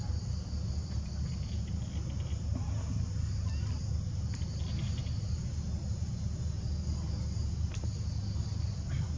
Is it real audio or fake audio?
real